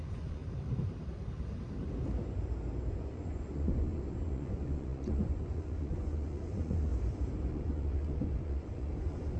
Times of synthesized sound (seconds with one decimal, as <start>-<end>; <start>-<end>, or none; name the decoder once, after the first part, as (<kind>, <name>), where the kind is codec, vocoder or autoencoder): 0.0-0.4 (vocoder, Vocos); 2.9-6.9; 7.5-9.4